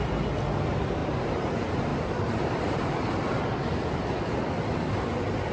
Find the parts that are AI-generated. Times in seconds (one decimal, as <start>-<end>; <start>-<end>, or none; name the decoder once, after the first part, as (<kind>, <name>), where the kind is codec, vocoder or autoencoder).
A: 1.0-1.5 (vocoder, BigVGAN v2); 1.9-3.4